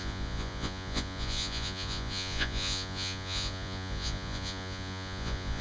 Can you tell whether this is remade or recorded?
remade